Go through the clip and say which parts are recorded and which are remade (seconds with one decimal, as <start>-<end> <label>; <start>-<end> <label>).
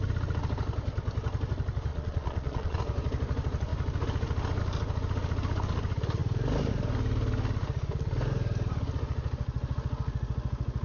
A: 0.0-1.9 recorded; 1.9-2.8 remade; 2.8-10.8 recorded